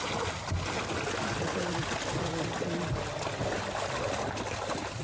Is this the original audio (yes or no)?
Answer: yes